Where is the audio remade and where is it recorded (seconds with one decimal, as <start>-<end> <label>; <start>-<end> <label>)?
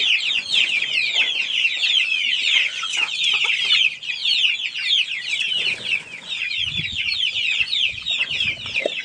0.0-4.2 remade; 4.2-5.5 recorded; 5.5-9.0 remade